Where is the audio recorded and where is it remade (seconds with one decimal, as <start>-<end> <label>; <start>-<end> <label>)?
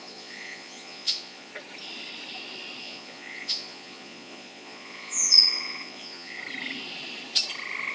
0.0-1.5 remade; 1.5-2.8 recorded; 2.8-6.4 remade; 6.4-7.9 recorded